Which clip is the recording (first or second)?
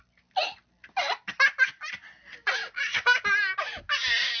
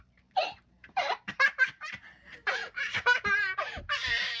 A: first